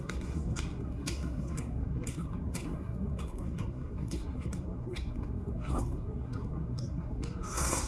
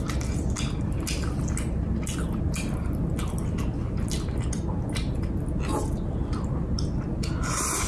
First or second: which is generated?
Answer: first